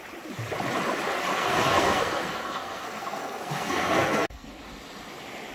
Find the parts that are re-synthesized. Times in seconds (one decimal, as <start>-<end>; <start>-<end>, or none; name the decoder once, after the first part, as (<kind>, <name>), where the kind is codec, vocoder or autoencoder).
1.3-4.6 (codec, SNAC)